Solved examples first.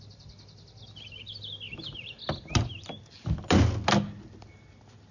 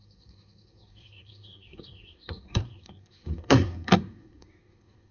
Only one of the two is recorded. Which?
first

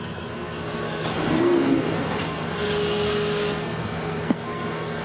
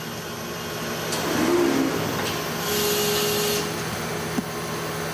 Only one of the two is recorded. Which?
second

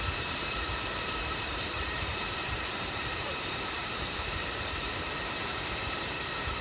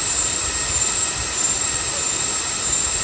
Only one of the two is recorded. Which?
second